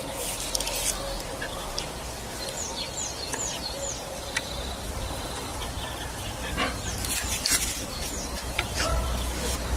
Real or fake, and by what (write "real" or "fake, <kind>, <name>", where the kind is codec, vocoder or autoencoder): real